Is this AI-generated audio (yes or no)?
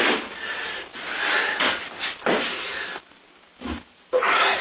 no